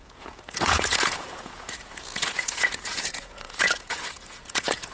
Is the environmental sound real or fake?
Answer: fake